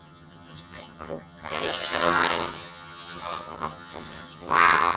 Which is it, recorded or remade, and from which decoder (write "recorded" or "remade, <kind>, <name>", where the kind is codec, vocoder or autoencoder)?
remade, vocoder, HiFi-GAN